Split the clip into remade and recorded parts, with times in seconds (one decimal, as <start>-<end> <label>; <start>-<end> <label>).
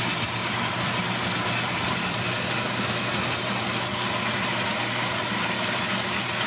0.0-6.5 recorded